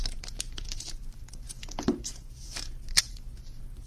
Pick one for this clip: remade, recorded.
remade